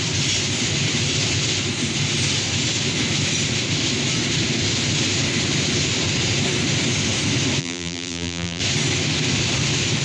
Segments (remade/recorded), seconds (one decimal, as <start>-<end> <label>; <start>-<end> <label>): 0.0-7.6 recorded; 7.6-8.6 remade; 8.6-10.0 recorded